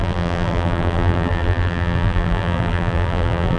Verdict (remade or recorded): remade